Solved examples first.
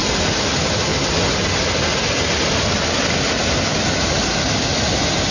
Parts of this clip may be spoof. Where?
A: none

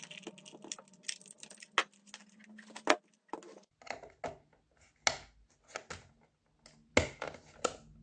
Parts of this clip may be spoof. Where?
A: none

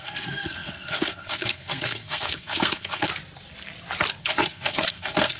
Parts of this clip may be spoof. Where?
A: 0.0-3.1 (codec, SNAC); 4.2-5.4